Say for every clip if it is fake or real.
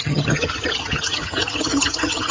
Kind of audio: fake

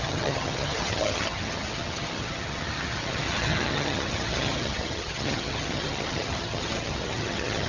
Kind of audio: fake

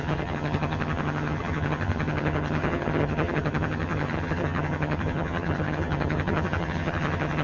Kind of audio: fake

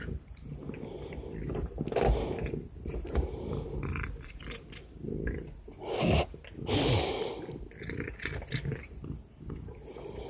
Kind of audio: real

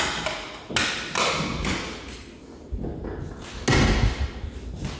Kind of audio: real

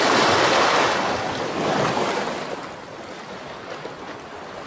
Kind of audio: real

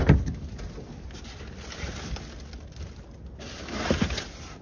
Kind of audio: real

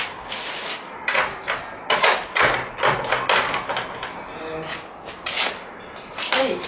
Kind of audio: real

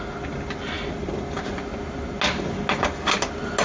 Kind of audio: real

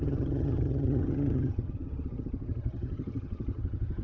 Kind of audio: fake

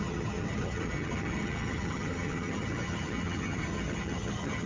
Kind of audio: fake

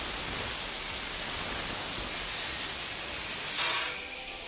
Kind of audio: real